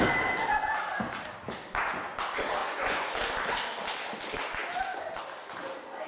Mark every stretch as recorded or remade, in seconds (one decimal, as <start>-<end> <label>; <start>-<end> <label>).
0.0-2.6 recorded; 2.6-3.1 remade; 3.1-6.1 recorded